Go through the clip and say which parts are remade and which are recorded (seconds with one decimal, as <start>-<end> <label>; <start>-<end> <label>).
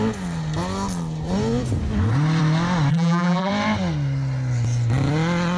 0.0-2.9 recorded; 2.9-3.5 remade; 3.5-5.6 recorded